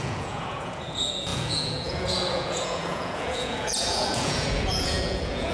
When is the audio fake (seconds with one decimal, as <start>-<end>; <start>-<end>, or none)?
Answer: 0.0-5.5